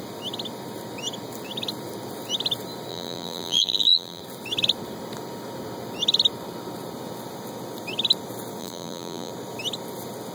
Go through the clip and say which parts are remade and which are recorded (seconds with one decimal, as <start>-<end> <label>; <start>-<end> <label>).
0.0-2.9 recorded; 2.9-4.2 remade; 4.2-8.6 recorded; 8.6-9.3 remade; 9.3-10.3 recorded